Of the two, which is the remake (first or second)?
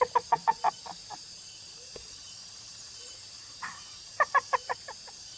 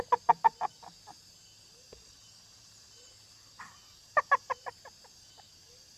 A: first